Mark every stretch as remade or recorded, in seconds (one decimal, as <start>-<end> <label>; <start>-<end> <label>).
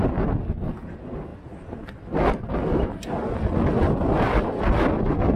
0.0-5.4 recorded